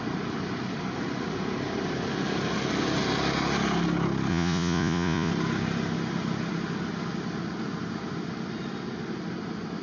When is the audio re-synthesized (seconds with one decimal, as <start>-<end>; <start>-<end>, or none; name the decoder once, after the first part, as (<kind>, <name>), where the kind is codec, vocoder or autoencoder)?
4.3-5.3 (vocoder, Vocos)